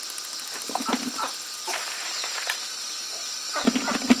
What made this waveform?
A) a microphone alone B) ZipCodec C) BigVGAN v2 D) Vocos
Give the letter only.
A